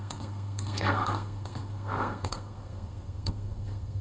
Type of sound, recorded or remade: remade